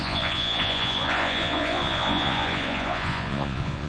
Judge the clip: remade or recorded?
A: remade